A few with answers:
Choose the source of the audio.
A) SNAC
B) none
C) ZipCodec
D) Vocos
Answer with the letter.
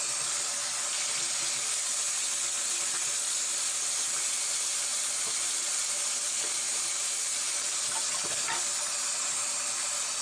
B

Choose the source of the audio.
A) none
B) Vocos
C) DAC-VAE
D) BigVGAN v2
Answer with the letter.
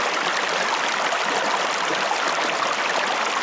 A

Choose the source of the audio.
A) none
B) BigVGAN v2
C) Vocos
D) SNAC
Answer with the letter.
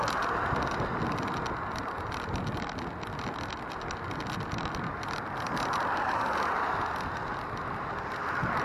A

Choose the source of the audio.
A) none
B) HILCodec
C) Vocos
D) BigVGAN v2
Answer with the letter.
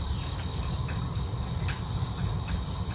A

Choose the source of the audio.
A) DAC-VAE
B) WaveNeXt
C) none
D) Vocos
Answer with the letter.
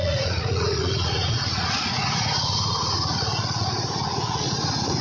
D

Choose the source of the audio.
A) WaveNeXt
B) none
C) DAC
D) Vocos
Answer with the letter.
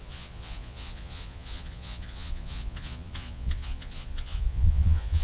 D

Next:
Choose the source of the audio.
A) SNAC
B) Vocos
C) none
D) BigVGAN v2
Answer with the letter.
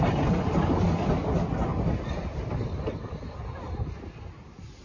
C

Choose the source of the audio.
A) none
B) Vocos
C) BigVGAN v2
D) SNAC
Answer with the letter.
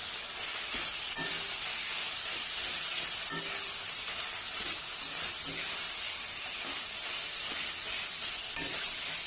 A